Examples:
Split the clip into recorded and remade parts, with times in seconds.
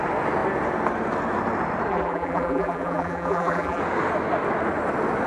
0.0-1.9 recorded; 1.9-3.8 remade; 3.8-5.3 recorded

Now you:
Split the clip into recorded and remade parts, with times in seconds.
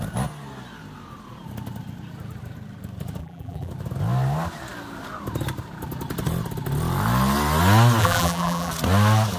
0.0-3.2 recorded; 3.2-3.7 remade; 3.7-8.0 recorded; 8.0-8.7 remade; 8.7-9.4 recorded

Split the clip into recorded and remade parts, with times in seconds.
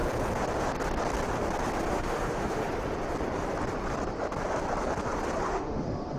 0.0-1.9 recorded; 1.9-2.6 remade; 2.6-5.5 recorded; 5.5-6.2 remade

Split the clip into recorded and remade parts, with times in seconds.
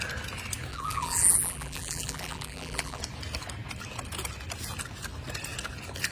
0.0-0.7 recorded; 0.7-3.0 remade; 3.0-6.1 recorded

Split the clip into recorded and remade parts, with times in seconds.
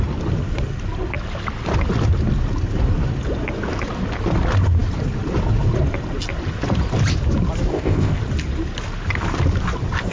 0.0-7.7 recorded; 7.7-8.2 remade; 8.2-10.1 recorded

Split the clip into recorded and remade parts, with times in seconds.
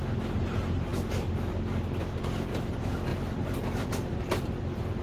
0.0-5.0 recorded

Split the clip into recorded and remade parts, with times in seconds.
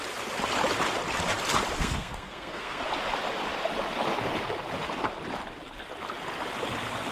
0.0-1.8 recorded; 1.8-2.8 remade; 2.8-7.1 recorded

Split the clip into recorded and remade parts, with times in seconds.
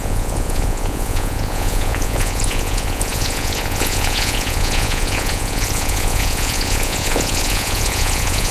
0.0-8.5 remade